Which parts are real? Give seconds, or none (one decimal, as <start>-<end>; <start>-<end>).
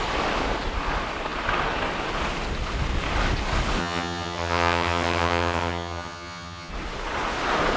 0.0-3.8; 6.7-7.8